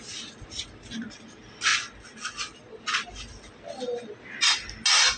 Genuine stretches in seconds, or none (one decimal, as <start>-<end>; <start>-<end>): 0.0-5.2